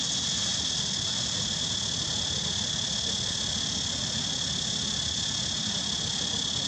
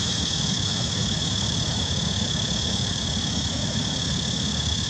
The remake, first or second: second